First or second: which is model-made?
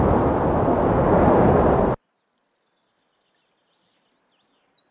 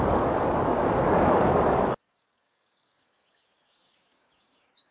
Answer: second